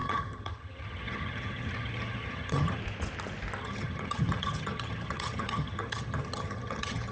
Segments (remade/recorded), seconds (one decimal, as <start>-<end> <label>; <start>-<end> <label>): 0.0-2.8 remade; 2.8-3.6 recorded; 3.6-7.1 remade